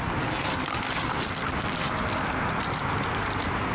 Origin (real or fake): real